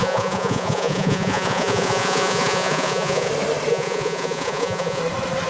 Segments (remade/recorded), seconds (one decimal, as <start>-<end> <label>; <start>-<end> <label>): 0.0-3.3 remade; 3.3-3.7 recorded; 3.7-5.0 remade; 5.0-5.5 recorded